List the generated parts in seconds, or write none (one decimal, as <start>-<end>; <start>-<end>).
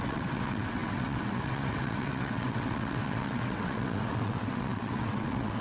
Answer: 0.0-5.6